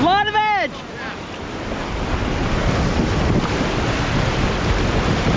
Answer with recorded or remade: recorded